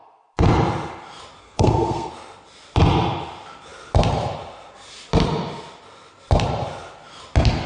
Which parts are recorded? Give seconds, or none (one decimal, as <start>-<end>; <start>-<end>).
0.0-1.4; 2.1-7.7